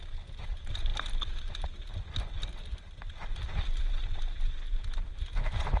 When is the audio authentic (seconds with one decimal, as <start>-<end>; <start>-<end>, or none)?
0.0-5.8